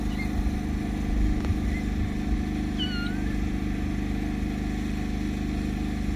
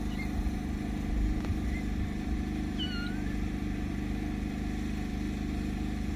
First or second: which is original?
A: first